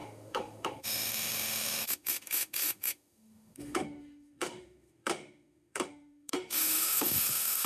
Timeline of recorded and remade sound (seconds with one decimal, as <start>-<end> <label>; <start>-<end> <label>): 0.0-7.7 remade